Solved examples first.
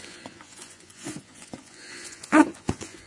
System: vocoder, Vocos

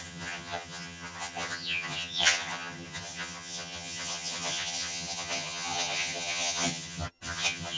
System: vocoder, HiFi-GAN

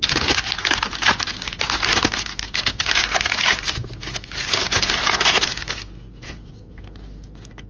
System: none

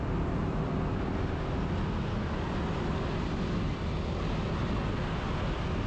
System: none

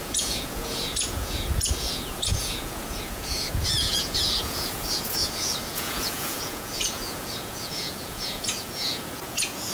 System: vocoder, Vocos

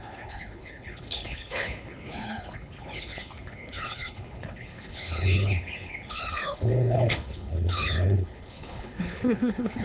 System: codec, HILCodec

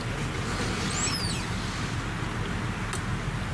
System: none